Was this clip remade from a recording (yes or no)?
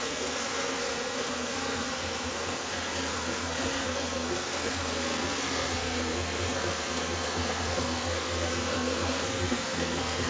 yes